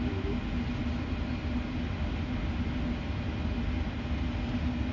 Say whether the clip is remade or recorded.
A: recorded